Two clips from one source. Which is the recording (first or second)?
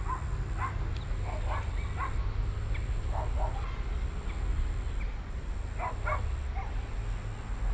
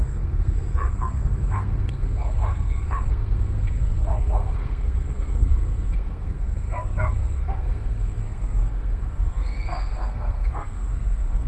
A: first